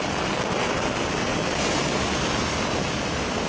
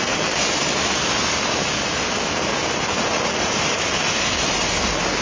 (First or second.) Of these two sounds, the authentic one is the second